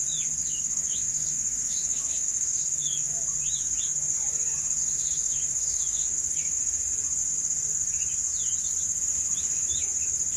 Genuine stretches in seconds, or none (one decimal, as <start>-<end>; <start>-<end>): 0.0-0.4; 3.1-4.8; 6.6-10.4